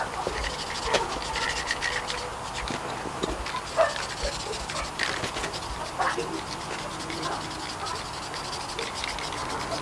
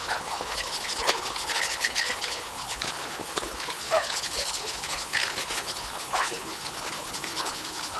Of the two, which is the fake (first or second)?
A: second